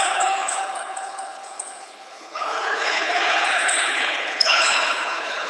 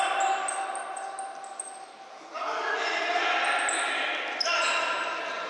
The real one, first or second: second